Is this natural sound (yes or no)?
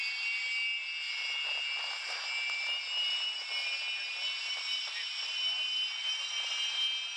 yes